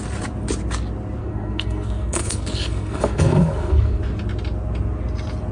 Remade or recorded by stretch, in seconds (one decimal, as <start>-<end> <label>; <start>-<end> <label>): 0.0-1.2 recorded; 1.2-4.0 remade; 4.0-5.5 recorded